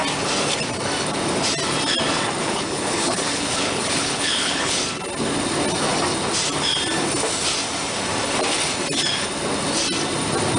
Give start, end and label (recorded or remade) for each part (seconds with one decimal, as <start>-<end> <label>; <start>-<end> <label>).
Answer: 0.0-2.4 recorded; 2.4-4.8 remade; 4.8-10.6 recorded